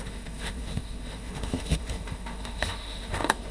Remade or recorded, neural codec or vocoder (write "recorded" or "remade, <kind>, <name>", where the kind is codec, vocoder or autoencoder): remade, autoencoder, DAC-VAE